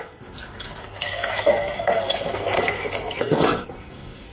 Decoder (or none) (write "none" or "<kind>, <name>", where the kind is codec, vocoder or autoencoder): codec, SNAC